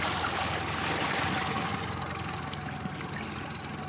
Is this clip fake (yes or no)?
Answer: no